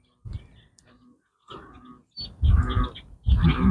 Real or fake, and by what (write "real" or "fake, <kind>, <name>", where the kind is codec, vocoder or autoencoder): real